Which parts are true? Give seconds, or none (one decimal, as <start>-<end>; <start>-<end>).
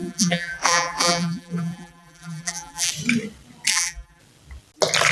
2.9-3.7; 4.2-5.1